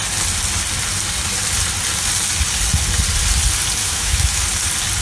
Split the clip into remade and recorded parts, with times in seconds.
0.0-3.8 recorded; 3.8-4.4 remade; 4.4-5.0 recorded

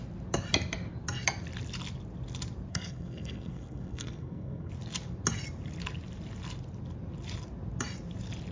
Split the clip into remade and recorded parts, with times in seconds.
0.0-2.7 recorded; 2.7-4.7 remade; 4.7-8.5 recorded

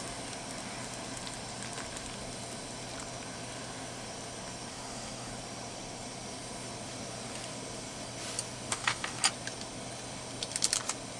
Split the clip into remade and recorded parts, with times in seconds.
0.0-4.7 recorded; 4.7-5.3 remade; 5.3-8.7 recorded; 8.7-9.2 remade; 9.2-11.2 recorded

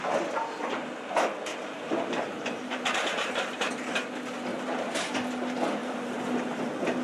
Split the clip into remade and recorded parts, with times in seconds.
0.0-1.5 recorded; 1.5-3.7 remade; 3.7-4.5 recorded; 4.5-5.1 remade; 5.1-5.8 recorded; 5.8-6.6 remade; 6.6-7.0 recorded

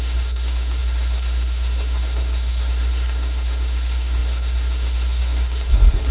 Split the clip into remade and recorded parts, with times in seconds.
0.0-6.1 remade